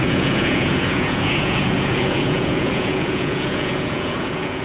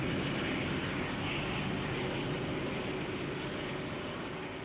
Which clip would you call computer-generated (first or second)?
first